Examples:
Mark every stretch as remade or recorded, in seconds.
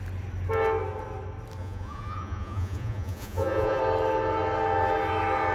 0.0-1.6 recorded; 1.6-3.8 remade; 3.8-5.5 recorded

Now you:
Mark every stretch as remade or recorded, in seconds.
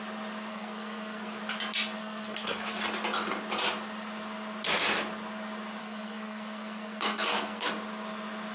0.0-0.5 recorded; 0.5-1.4 remade; 1.4-2.0 recorded; 2.0-2.8 remade; 2.8-5.8 recorded; 5.8-7.7 remade; 7.7-8.5 recorded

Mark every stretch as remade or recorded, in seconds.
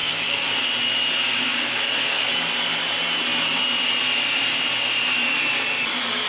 0.0-0.5 remade; 0.5-1.5 recorded; 1.5-2.3 remade; 2.3-6.3 recorded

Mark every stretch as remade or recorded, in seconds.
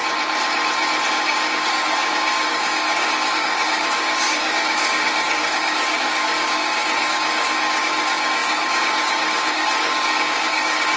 0.0-1.1 recorded; 1.1-11.0 remade